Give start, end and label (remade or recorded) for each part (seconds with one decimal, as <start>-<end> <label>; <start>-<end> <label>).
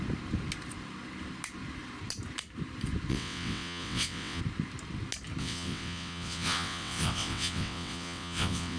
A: 0.0-3.1 recorded; 3.1-4.4 remade; 4.4-5.4 recorded; 5.4-8.8 remade